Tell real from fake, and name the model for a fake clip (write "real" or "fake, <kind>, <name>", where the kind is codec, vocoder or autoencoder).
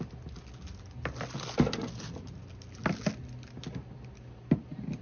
real